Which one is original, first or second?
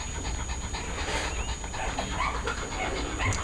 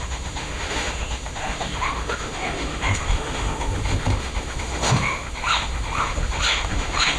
first